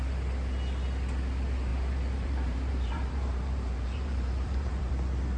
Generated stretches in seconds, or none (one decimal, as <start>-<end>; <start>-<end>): 1.7-4.9